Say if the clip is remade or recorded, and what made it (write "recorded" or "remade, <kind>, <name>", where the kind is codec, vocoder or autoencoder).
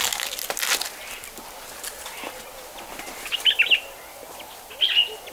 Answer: recorded